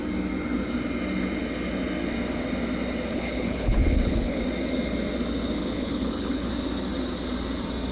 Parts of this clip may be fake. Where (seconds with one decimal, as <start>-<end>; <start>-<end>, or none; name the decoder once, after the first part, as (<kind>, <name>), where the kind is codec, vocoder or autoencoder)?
3.1-4.4 (codec, HILCodec); 5.6-6.5